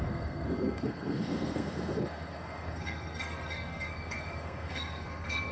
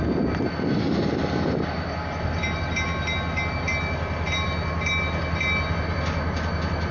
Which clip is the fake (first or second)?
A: first